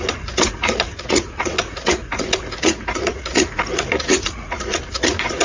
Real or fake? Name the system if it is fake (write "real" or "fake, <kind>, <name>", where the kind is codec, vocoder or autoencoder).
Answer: fake, vocoder, Vocos